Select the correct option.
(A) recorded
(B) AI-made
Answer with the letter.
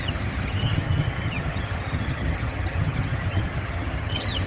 B